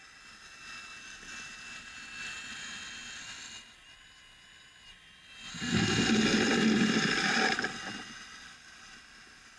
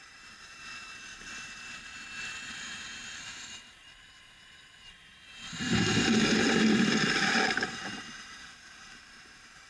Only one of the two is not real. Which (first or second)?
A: second